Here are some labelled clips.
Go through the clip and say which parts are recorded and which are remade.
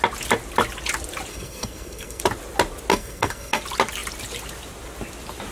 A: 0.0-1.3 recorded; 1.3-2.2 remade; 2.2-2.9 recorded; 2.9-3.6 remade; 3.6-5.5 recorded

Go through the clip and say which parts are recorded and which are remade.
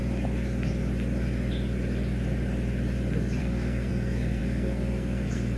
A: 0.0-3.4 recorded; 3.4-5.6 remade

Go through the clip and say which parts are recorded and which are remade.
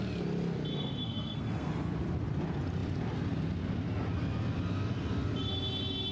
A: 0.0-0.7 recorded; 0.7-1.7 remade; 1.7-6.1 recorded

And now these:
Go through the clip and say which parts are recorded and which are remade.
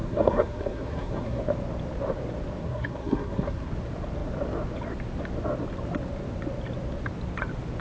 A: 0.0-1.4 remade; 1.4-2.6 recorded; 2.6-3.7 remade; 3.7-7.8 recorded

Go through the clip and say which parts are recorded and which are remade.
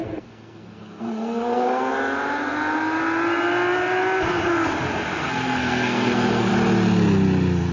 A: 0.0-1.9 remade; 1.9-5.2 recorded; 5.2-6.5 remade; 6.5-7.7 recorded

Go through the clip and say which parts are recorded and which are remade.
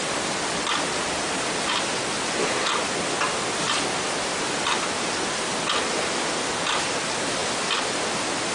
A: 0.0-8.5 recorded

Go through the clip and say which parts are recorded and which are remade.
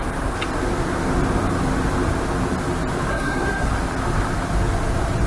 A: 0.0-3.1 recorded; 3.1-3.7 remade; 3.7-5.3 recorded